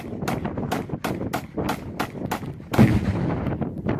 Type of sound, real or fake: real